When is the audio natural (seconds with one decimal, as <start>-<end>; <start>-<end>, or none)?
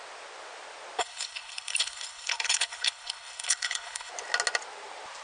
0.0-1.0; 4.1-5.2